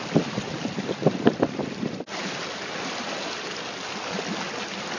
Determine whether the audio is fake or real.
real